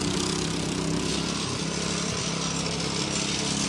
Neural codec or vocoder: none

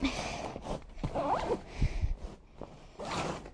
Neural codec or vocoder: none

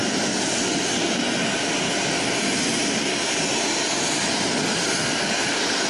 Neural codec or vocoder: none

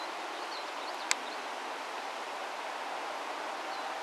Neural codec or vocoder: none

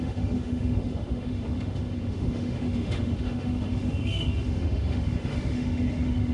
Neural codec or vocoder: autoencoder, DAC-VAE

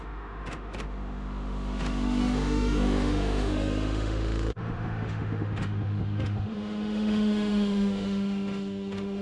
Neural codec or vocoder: autoencoder, DAC-VAE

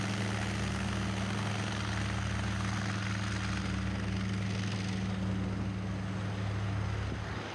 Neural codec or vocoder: none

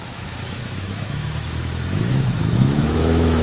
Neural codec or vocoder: autoencoder, DAC-VAE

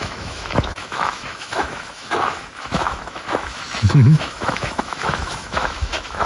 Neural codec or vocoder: autoencoder, DAC-VAE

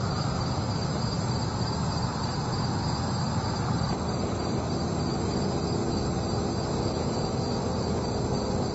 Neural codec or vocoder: none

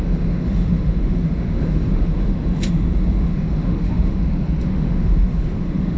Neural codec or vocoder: autoencoder, DAC-VAE